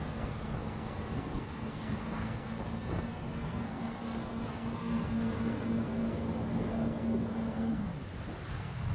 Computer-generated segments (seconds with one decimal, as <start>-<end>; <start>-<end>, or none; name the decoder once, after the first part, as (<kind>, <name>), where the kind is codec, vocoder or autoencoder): 0.0-7.9 (codec, SNAC); 8.5-8.9